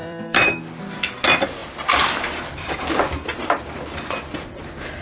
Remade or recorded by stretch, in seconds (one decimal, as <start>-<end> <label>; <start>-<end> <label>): 0.0-0.6 remade; 0.6-5.0 recorded